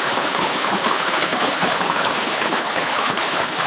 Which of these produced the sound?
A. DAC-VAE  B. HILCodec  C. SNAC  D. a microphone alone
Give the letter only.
B